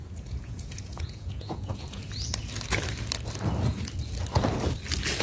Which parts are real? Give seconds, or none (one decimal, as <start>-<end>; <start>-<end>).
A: 2.0-5.2

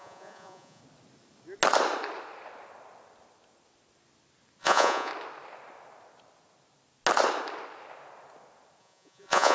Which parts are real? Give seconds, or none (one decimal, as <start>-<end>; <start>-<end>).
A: 0.8-4.6; 5.1-8.8

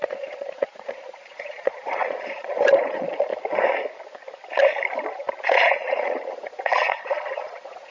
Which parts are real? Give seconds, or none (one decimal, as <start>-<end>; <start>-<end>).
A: 3.3-5.4

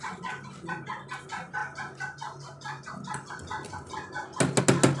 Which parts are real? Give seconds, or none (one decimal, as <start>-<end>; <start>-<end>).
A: 0.0-5.0

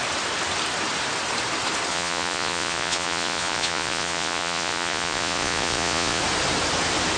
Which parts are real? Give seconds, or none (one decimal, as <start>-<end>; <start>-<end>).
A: 0.0-1.9; 6.2-7.2